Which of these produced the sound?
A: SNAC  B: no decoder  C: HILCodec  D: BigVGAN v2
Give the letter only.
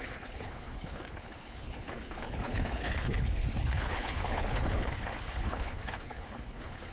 C